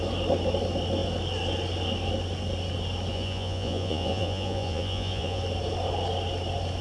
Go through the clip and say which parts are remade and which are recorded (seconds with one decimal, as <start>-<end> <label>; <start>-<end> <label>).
0.0-3.1 recorded; 3.1-5.4 remade; 5.4-6.8 recorded